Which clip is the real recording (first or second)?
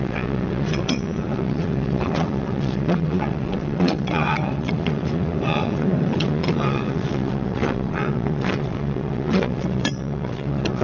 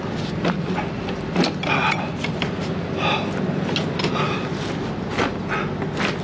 second